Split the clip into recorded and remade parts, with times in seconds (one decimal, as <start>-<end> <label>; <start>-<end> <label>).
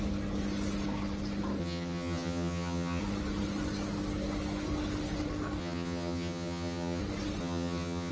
0.0-1.6 recorded; 1.6-3.0 remade; 3.0-5.6 recorded; 5.6-7.0 remade; 7.0-7.4 recorded; 7.4-8.1 remade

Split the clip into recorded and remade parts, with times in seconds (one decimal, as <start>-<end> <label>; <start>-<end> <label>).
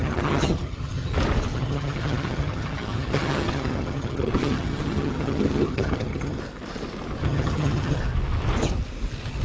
0.0-1.1 remade; 1.1-1.5 recorded; 1.5-6.4 remade; 6.4-7.2 recorded; 7.2-8.0 remade; 8.0-9.4 recorded